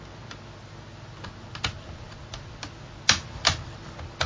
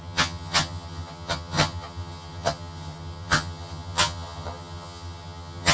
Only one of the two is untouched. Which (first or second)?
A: first